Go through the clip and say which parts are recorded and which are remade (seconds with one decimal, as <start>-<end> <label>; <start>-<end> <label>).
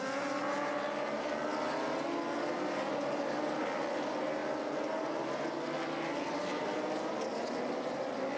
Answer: 0.0-8.4 recorded